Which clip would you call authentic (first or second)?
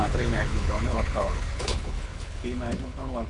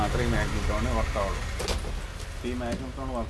second